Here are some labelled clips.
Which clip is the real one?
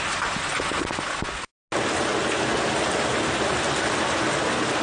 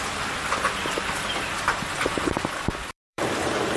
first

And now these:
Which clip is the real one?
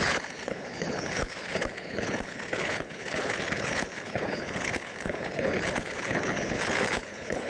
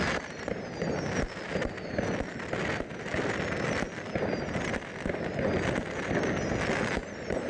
second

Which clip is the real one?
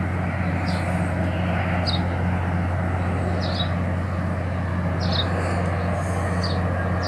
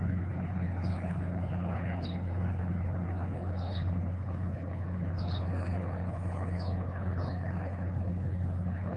first